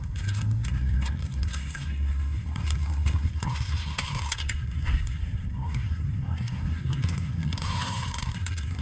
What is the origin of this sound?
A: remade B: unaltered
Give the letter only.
A